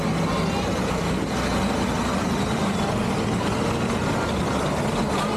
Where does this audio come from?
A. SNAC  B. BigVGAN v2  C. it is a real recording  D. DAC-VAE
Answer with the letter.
C